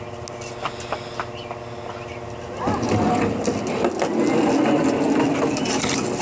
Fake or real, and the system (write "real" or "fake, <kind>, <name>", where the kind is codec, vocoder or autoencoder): real